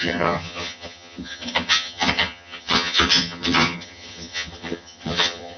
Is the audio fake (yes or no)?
yes